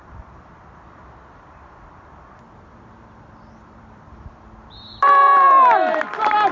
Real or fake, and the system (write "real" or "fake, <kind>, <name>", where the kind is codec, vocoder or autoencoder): fake, vocoder, BigVGAN v2